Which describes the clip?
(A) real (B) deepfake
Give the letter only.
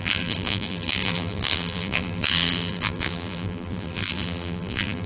B